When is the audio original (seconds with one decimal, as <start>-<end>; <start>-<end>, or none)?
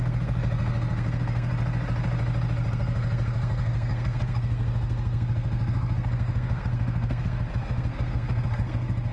1.5-2.7